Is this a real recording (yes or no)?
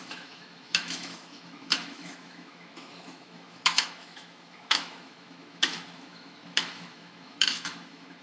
no